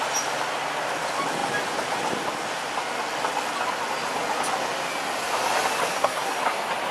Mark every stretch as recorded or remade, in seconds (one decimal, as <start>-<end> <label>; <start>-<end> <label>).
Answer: 0.0-5.9 recorded; 5.9-6.4 remade; 6.4-6.9 recorded